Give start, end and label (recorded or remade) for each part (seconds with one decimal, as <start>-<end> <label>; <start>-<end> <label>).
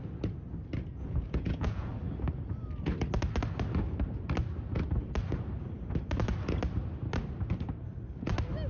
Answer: 0.0-0.9 recorded; 0.9-1.9 remade; 1.9-8.7 recorded